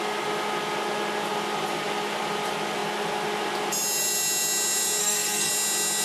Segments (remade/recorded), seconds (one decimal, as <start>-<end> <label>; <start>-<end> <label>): 0.0-5.0 recorded; 5.0-5.5 remade; 5.5-6.0 recorded